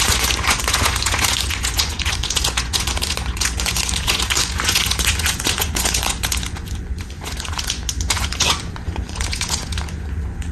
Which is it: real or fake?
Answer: fake